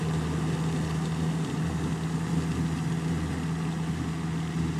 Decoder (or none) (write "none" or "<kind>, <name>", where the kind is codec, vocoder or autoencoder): none